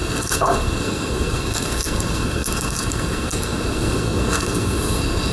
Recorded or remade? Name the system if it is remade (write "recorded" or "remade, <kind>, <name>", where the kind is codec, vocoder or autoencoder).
remade, codec, SNAC